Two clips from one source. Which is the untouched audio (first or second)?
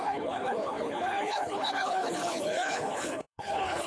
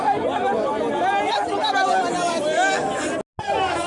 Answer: second